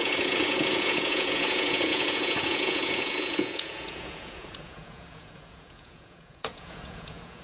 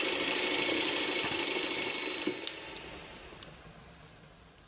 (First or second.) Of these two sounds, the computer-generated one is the first